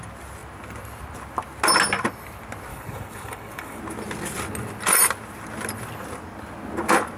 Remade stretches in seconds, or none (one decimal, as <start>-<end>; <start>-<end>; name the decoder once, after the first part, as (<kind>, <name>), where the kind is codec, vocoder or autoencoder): 2.7-3.8 (codec, DAC)